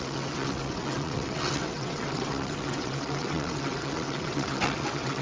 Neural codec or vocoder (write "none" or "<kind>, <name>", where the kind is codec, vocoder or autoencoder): vocoder, WaveNeXt